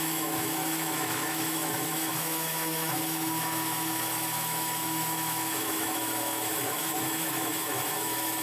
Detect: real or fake fake